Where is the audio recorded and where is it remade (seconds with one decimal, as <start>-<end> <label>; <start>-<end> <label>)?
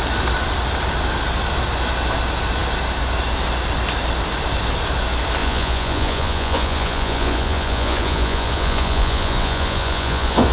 0.0-5.4 recorded; 5.4-10.5 remade